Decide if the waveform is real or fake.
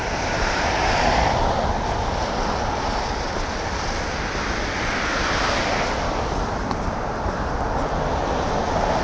real